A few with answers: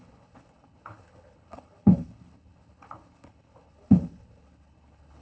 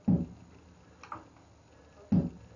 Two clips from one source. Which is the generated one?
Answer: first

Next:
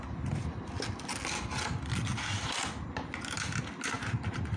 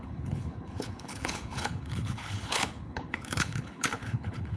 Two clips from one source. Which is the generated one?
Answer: second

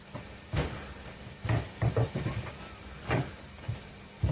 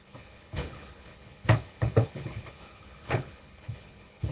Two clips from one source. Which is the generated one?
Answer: second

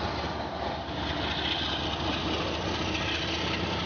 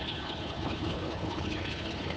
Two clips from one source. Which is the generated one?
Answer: second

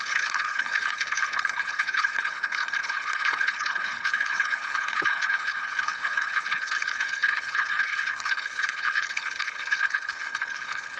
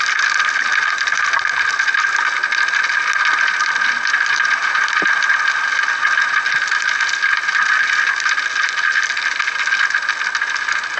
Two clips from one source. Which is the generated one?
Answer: first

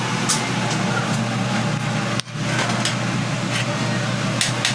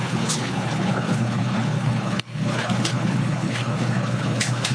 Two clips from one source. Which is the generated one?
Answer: second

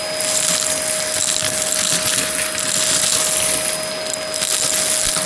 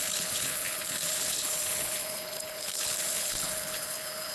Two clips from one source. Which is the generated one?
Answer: second